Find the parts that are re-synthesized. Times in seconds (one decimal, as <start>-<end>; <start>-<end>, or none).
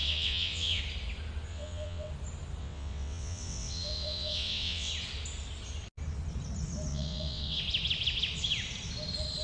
0.0-0.8; 1.5-2.1; 2.6-4.9; 6.9-7.6